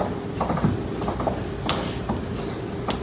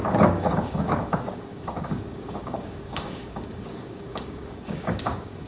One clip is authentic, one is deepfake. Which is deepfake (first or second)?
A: second